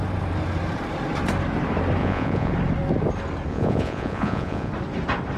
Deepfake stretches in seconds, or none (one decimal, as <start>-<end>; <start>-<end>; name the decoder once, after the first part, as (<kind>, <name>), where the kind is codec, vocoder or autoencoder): 2.0-2.5 (vocoder, Vocos); 3.5-4.7